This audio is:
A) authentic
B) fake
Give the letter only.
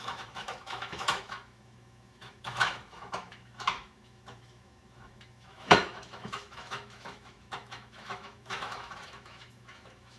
B